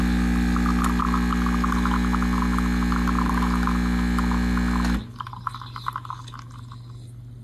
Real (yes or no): yes